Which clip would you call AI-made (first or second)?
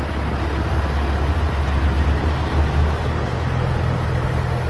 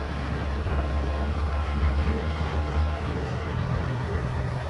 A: second